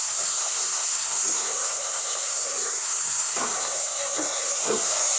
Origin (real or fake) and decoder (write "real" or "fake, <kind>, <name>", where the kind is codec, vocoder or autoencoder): fake, codec, SNAC